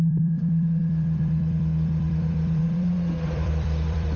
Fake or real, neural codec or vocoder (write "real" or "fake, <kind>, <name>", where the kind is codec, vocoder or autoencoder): fake, vocoder, BigVGAN v2